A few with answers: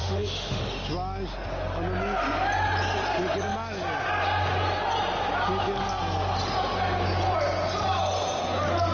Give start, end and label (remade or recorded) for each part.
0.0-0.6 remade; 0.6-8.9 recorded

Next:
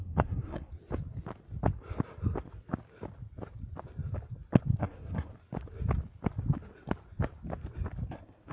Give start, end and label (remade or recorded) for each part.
0.0-0.7 remade; 0.7-4.8 recorded; 4.8-5.3 remade; 5.3-8.1 recorded; 8.1-8.5 remade

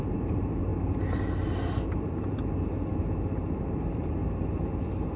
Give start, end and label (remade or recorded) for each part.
0.0-0.7 remade; 0.7-3.8 recorded; 3.8-4.2 remade; 4.2-5.2 recorded

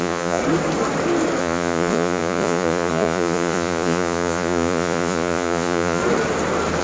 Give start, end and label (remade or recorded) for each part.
0.0-0.4 remade; 0.4-1.4 recorded; 1.4-6.0 remade; 6.0-6.8 recorded